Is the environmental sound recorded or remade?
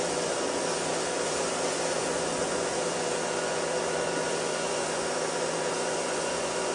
remade